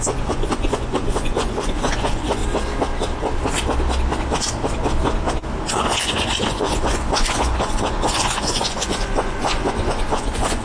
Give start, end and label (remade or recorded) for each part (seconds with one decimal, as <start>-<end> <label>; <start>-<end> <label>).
0.0-2.4 remade; 2.4-5.7 recorded; 5.7-10.6 remade